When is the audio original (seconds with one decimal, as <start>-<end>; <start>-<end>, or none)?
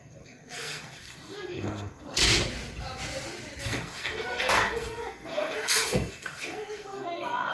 2.2-3.6